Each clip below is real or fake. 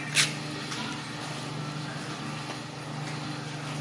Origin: real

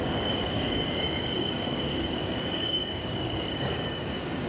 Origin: fake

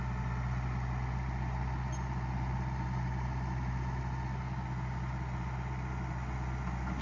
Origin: real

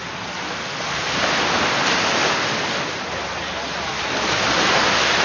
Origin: real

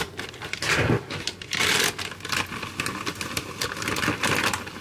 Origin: real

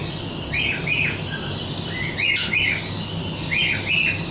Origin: real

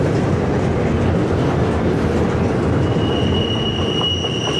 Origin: real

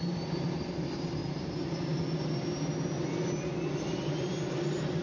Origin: real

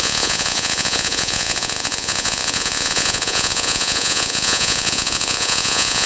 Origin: fake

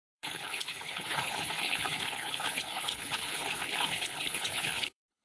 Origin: fake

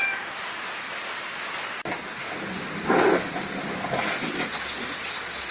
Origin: real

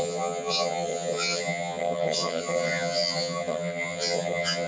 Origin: fake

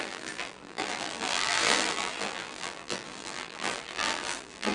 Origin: fake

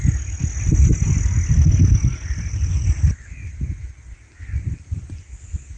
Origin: real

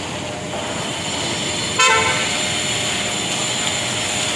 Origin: real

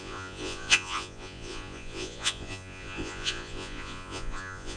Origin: fake